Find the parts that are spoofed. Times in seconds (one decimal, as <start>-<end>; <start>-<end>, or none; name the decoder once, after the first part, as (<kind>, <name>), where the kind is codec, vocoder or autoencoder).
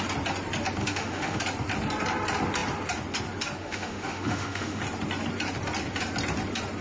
0.8-1.4 (autoencoder, DAC-VAE); 3.6-4.8